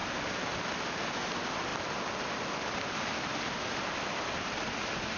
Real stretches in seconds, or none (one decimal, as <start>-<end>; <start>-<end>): 0.0-5.2